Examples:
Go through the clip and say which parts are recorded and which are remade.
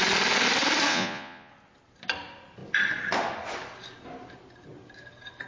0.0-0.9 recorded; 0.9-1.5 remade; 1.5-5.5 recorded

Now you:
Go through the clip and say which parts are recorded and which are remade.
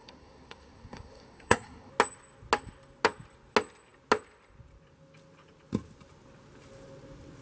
0.0-1.9 remade; 1.9-7.4 recorded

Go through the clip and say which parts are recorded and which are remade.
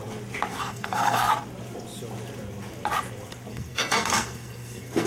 0.0-0.5 recorded; 0.5-1.3 remade; 1.3-3.5 recorded; 3.5-5.1 remade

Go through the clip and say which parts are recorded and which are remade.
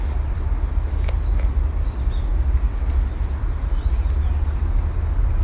0.0-5.4 recorded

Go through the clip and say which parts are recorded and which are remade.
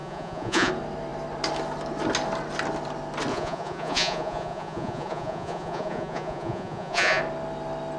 0.0-0.7 remade; 0.7-3.3 recorded; 3.3-7.2 remade; 7.2-8.0 recorded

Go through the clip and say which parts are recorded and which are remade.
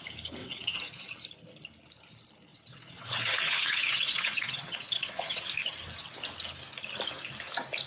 0.0-0.4 recorded; 0.4-1.1 remade; 1.1-2.5 recorded; 2.5-5.5 remade; 5.5-7.9 recorded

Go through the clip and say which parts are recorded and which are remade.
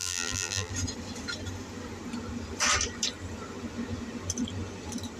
0.0-0.7 remade; 0.7-5.2 recorded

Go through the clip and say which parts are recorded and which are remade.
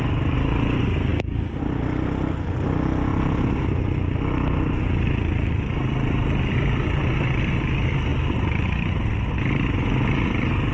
0.0-1.1 recorded; 1.1-1.6 remade; 1.6-10.7 recorded